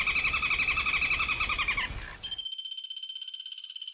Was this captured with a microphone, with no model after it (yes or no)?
yes